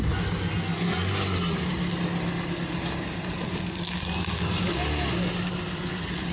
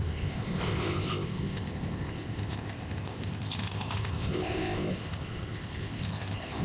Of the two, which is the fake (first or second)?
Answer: second